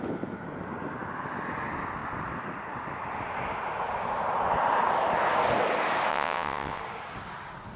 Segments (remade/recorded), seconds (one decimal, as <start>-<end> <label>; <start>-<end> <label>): 0.0-6.1 recorded; 6.1-6.8 remade; 6.8-7.8 recorded